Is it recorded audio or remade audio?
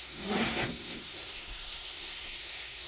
remade